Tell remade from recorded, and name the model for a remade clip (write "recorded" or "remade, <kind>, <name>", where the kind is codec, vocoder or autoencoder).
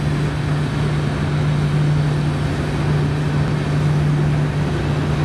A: recorded